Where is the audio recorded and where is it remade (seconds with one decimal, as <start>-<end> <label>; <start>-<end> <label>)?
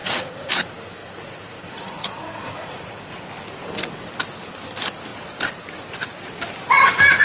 0.0-0.5 remade; 0.5-1.0 recorded; 1.0-3.2 remade; 3.2-7.2 recorded